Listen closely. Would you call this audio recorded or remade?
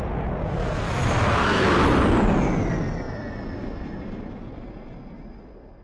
recorded